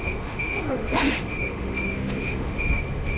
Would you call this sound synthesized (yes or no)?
yes